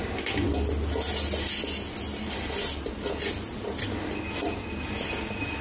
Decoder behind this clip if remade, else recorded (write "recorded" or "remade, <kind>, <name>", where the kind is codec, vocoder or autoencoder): recorded